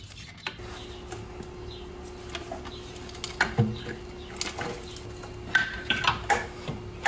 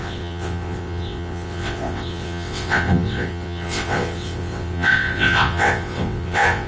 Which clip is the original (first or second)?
first